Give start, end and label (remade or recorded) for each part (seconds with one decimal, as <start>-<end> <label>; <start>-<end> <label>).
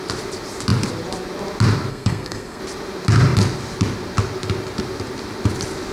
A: 0.0-1.9 recorded; 1.9-2.6 remade; 2.6-5.9 recorded